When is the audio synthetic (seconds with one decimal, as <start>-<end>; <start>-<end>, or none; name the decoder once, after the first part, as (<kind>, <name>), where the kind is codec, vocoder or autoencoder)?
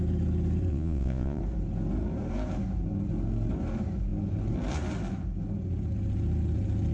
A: 0.7-1.4 (vocoder, Vocos)